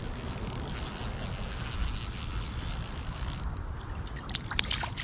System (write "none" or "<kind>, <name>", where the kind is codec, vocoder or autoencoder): none